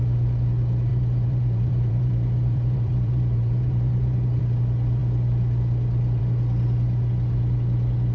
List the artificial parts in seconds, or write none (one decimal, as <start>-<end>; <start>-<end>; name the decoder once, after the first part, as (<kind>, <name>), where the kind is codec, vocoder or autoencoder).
0.9-4.4 (vocoder, BigVGAN v2)